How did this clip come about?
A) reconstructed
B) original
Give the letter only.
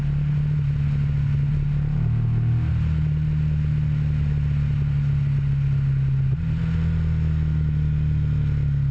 B